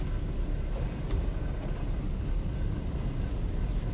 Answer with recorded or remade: recorded